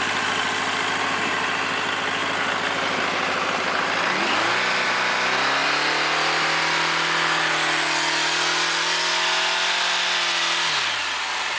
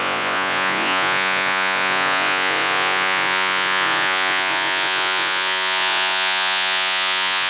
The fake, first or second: second